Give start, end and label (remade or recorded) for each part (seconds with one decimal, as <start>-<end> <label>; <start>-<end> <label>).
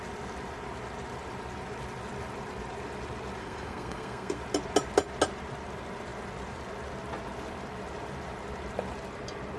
0.0-3.4 recorded; 3.4-4.4 remade; 4.4-9.6 recorded